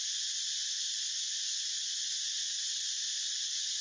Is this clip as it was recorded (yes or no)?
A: yes